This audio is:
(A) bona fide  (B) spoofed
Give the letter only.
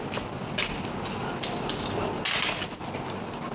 A